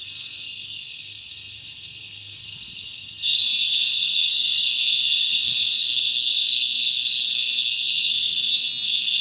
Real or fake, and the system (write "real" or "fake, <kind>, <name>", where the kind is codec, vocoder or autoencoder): fake, codec, SNAC